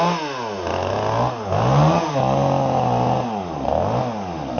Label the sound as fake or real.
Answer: real